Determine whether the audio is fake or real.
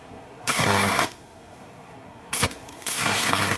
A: fake